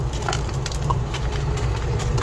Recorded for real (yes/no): yes